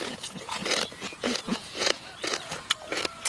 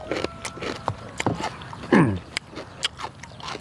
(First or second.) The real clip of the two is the second